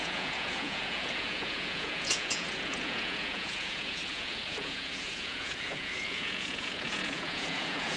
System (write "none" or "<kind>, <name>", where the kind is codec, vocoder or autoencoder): vocoder, Vocos